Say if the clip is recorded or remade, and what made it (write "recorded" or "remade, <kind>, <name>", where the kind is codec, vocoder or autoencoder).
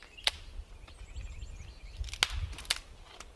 recorded